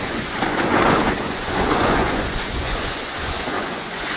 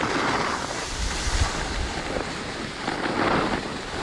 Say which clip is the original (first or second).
second